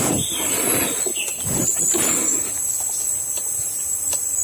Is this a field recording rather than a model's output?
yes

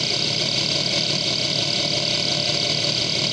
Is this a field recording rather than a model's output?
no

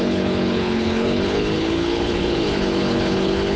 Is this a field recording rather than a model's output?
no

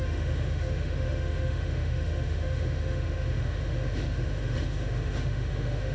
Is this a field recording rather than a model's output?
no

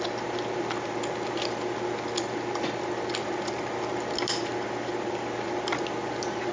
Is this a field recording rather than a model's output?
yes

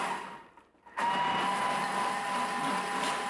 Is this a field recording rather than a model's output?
yes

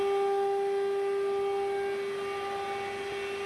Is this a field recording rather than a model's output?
yes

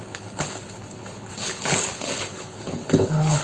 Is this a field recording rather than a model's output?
no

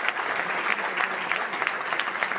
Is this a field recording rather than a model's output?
yes